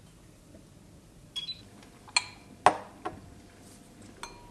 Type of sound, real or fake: real